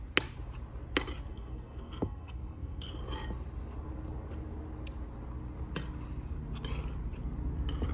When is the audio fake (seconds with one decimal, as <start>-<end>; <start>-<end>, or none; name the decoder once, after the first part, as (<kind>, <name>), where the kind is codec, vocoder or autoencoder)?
1.3-2.9 (codec, SNAC)